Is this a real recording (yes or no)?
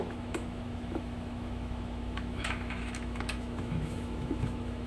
no